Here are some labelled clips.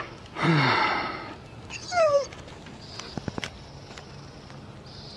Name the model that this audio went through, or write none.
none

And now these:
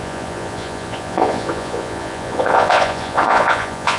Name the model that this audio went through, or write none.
vocoder, Vocos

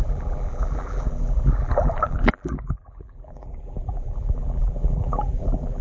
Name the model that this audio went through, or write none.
vocoder, BigVGAN v2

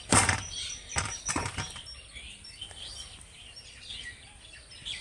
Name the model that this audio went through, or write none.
vocoder, BigVGAN v2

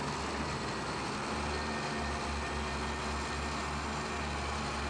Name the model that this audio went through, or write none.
none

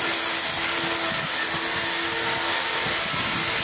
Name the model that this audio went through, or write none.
none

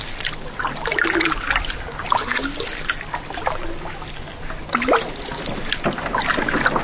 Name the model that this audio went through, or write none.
none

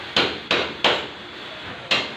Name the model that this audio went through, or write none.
none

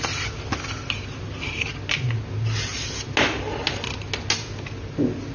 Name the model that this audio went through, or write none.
none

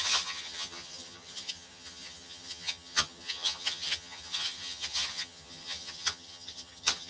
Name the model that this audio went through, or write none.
vocoder, HiFi-GAN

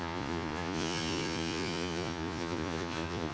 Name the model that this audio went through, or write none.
vocoder, Vocos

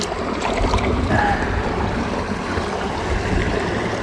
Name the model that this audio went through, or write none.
none